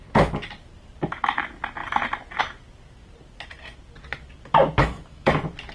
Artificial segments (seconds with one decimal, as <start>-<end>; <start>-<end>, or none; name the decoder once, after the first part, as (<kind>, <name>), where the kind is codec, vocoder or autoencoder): 4.8-5.3 (autoencoder, DAC-VAE)